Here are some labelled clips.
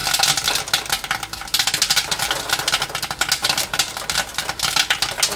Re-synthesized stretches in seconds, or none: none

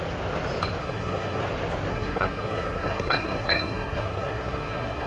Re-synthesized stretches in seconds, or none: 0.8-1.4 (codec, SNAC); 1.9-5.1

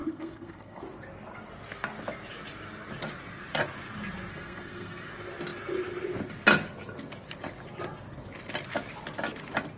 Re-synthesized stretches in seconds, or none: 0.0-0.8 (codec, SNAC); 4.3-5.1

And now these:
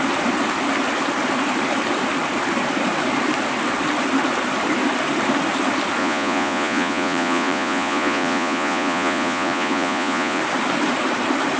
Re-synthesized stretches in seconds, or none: 6.0-10.4 (vocoder, Vocos)

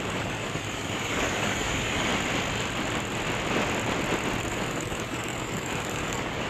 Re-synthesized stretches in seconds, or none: 0.0-2.1 (codec, DAC); 4.5-6.5